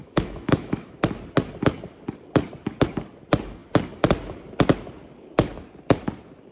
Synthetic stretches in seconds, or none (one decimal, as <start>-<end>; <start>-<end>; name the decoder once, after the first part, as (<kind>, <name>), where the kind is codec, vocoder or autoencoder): 0.0-1.0 (autoencoder, DAC-VAE)